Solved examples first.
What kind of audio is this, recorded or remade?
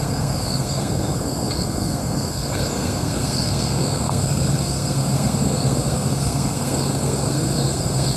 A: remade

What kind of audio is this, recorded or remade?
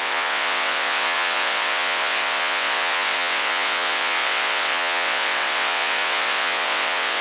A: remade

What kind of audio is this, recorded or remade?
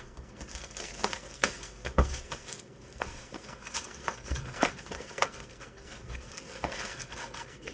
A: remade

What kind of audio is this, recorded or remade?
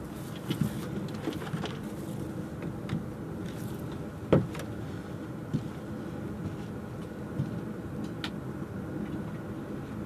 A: recorded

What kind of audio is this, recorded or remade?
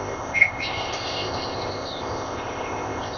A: remade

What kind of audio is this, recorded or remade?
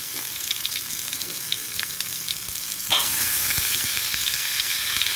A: remade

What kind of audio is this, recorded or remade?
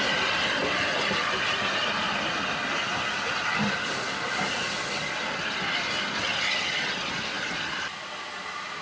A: recorded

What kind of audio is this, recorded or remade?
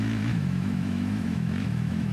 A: remade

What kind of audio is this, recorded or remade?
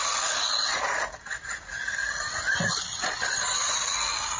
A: recorded